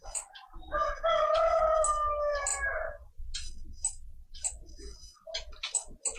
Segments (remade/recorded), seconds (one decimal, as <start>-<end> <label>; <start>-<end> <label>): 0.0-6.2 recorded